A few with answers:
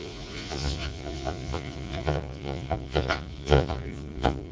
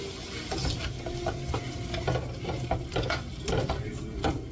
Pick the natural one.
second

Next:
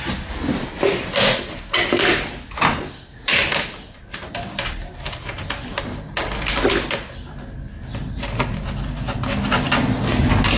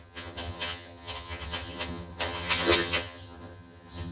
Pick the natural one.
first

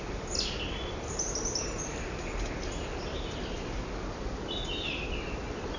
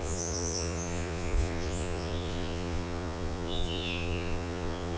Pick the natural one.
first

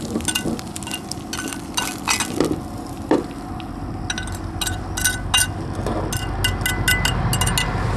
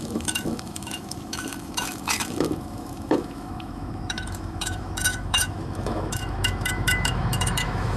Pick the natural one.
first